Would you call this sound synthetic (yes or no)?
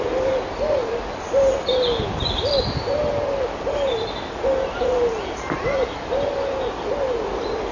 no